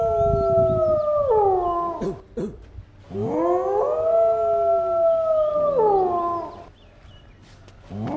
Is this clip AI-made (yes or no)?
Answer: no